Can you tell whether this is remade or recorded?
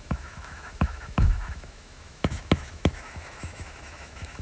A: remade